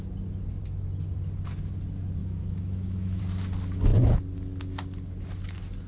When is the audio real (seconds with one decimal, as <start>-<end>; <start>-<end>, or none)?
0.0-2.2; 3.2-5.9